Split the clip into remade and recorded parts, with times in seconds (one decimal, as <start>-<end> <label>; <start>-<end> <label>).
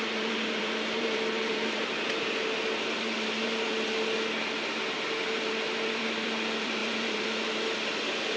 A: 0.0-3.7 remade; 3.7-5.2 recorded; 5.2-8.4 remade